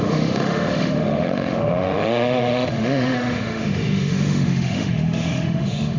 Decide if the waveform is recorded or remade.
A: remade